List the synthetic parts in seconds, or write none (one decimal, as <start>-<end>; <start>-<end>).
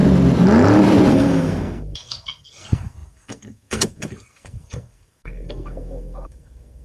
1.1-6.8